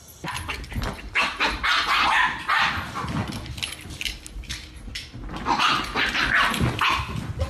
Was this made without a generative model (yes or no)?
yes